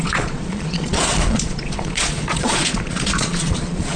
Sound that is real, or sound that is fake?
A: fake